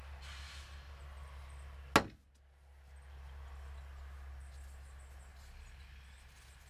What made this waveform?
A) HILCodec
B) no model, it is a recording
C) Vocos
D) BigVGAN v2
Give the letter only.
B